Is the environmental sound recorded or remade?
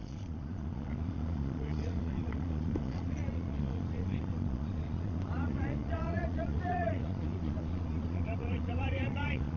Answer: remade